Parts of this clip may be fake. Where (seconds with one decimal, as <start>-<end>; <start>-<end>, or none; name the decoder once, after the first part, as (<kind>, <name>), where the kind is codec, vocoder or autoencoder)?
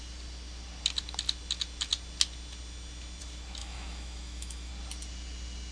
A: 3.6-4.7 (autoencoder, DAC-VAE)